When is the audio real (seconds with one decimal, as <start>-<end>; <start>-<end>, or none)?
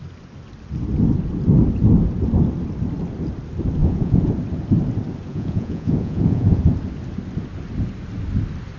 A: 0.0-3.8; 4.3-5.3; 6.6-8.8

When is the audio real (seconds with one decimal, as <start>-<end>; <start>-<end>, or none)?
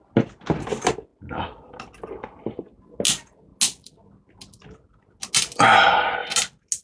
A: 0.0-6.8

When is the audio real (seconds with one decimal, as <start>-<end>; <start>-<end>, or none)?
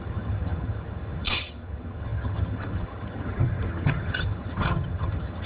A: none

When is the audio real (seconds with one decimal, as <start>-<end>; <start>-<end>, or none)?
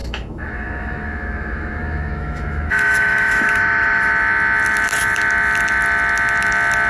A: 4.1-6.9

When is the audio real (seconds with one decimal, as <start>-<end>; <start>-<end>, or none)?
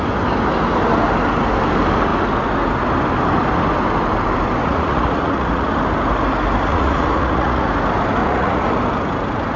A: 0.0-4.6; 5.7-6.7; 7.7-8.2; 8.8-9.6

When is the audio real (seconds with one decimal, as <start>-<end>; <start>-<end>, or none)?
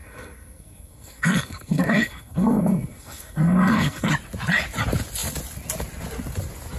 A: 4.1-6.8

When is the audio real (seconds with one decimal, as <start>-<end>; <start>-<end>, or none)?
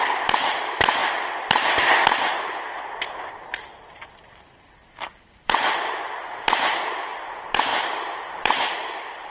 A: 1.0-2.4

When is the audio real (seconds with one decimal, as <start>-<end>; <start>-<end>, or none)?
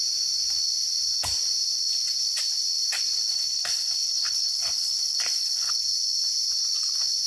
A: 0.0-3.3; 5.8-7.3